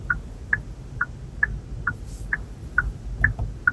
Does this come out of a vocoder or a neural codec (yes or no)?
no